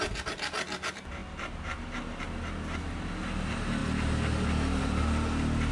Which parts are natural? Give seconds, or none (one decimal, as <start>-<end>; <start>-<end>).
0.0-5.7